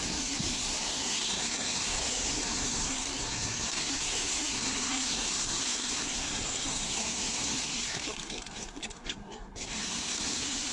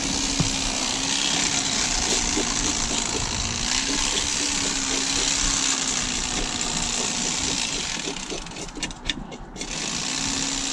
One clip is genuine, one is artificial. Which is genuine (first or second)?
second